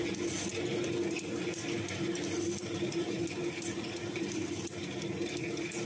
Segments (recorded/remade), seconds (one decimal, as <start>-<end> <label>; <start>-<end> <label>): 0.0-5.9 recorded